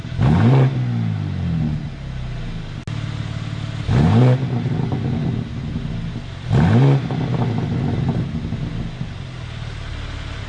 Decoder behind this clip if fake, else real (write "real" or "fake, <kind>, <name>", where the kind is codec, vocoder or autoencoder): real